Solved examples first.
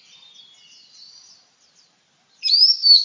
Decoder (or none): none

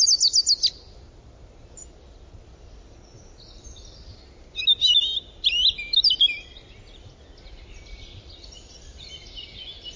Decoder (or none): none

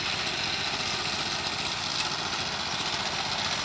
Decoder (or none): none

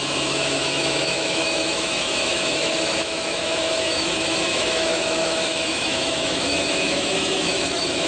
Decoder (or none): autoencoder, DAC-VAE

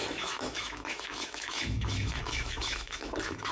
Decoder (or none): autoencoder, DAC-VAE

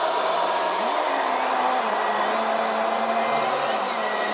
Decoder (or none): none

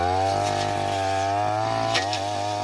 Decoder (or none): none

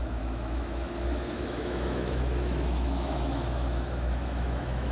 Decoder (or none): autoencoder, DAC-VAE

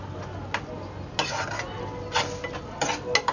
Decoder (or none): none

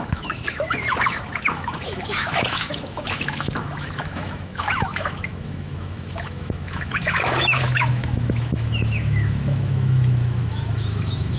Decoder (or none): autoencoder, DAC-VAE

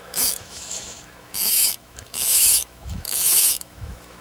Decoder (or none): autoencoder, DAC-VAE